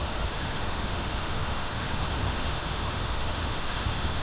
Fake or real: fake